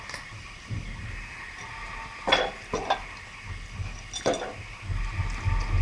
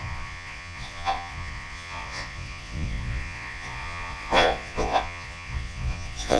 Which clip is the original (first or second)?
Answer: first